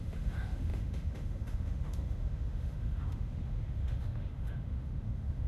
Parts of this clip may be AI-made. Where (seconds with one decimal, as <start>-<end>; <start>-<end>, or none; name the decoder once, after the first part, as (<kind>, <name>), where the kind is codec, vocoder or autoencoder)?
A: 0.0-5.5 (autoencoder, DAC-VAE)